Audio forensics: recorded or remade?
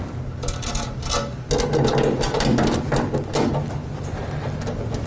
recorded